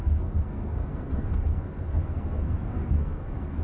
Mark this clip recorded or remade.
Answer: remade